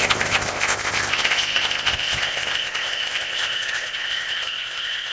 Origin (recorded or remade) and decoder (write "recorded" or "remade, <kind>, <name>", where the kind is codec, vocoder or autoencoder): remade, codec, ZipCodec